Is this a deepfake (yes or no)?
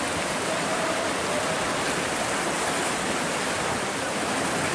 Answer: no